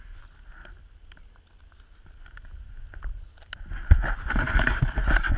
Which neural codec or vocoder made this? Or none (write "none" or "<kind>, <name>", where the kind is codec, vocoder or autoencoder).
none